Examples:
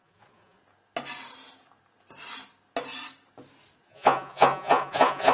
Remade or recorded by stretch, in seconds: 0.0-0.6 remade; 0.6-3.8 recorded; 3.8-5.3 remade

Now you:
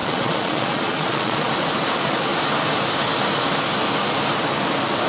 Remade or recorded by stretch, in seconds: 0.0-1.5 remade; 1.5-5.1 recorded